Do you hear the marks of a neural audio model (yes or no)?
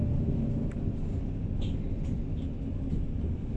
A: no